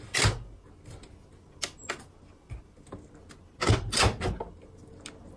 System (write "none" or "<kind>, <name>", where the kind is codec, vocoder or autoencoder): none